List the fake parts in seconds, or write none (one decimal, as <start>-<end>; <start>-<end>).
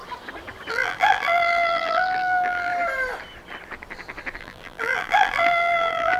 0.7-2.7; 4.4-6.2